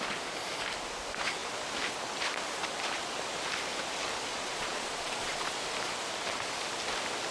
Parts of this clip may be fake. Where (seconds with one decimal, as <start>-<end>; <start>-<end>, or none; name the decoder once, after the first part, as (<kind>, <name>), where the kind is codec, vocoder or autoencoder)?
4.3-5.6 (vocoder, Vocos)